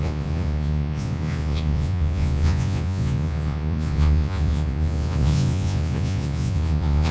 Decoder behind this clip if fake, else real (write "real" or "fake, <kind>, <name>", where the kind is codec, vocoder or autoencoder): fake, vocoder, Vocos